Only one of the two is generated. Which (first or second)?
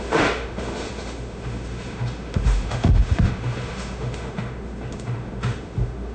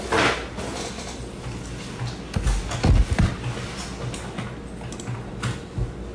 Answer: first